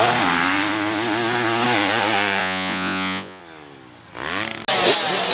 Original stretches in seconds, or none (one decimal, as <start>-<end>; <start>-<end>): 0.0-2.4; 3.4-5.3